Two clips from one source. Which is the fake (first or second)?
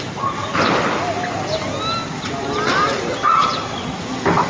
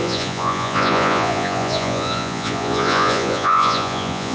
second